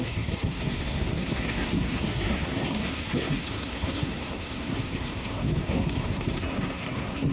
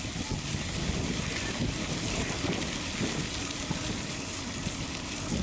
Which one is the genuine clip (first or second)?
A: second